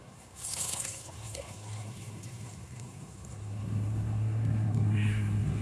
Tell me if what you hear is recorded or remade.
remade